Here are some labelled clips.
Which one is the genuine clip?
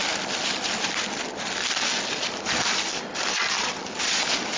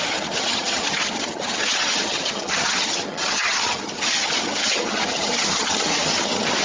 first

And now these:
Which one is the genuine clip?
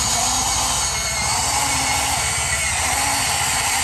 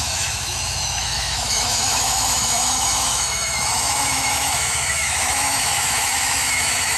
first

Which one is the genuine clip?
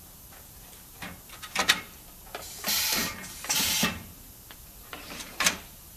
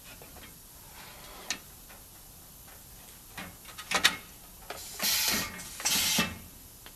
second